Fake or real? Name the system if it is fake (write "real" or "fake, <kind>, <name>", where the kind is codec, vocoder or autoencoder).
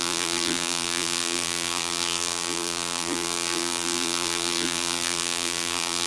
fake, vocoder, BigVGAN v2